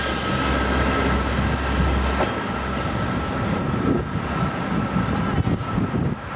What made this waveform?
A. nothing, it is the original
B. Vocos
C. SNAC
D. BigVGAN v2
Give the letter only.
A